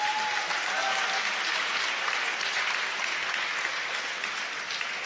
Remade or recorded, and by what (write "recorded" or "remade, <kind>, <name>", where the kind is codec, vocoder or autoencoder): recorded